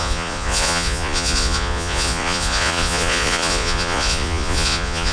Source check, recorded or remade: remade